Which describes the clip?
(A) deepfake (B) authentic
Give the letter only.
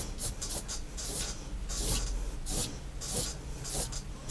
B